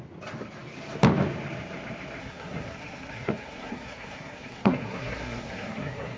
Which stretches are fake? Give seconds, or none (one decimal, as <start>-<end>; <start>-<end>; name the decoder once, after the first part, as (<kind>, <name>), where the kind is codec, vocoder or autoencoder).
2.2-6.2 (codec, SNAC)